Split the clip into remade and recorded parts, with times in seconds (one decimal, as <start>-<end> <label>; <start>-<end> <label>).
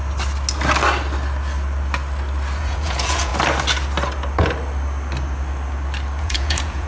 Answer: 0.0-2.6 recorded; 2.6-3.3 remade; 3.3-6.2 recorded; 6.2-6.9 remade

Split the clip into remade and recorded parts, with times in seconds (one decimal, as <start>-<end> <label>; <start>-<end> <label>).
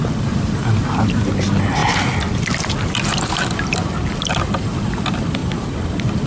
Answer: 0.0-6.3 recorded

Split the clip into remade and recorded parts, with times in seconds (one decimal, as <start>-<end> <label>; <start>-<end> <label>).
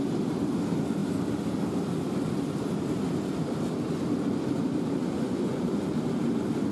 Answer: 0.0-5.0 recorded; 5.0-5.8 remade; 5.8-6.7 recorded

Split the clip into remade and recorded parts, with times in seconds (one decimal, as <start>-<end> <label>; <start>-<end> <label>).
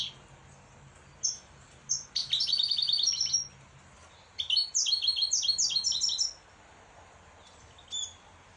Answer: 0.0-8.6 recorded